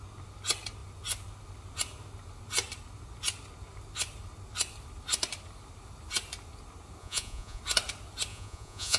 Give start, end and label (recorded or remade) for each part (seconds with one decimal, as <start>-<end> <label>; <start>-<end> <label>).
0.0-7.0 recorded; 7.0-7.6 remade; 7.6-8.3 recorded; 8.3-9.0 remade